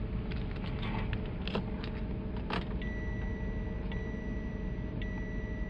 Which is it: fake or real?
real